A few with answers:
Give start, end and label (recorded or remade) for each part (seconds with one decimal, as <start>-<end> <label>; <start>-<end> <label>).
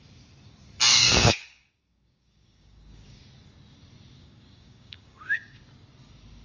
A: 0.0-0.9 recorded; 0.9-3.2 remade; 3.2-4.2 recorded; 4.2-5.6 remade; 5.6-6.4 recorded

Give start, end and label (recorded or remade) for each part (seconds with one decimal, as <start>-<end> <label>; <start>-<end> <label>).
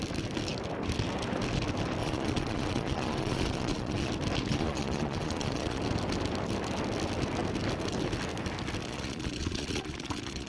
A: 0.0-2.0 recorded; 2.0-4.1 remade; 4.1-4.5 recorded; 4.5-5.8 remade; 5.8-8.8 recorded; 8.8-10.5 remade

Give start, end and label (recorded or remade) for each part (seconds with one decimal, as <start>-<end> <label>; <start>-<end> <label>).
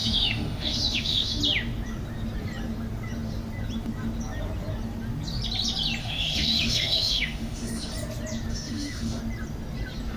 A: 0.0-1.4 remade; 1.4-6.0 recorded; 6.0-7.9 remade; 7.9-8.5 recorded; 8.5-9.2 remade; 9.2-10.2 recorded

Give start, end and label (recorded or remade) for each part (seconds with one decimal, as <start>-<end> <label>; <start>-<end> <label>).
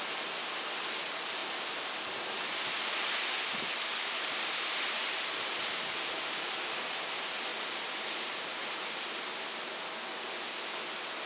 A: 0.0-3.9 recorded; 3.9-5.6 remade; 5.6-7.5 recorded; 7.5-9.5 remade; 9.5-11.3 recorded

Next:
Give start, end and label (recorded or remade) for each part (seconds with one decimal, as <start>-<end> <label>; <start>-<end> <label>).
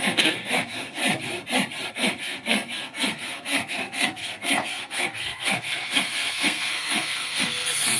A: 0.0-1.0 remade; 1.0-1.9 recorded; 1.9-8.0 remade